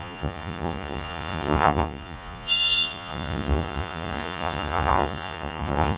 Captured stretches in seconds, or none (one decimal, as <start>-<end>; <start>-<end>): none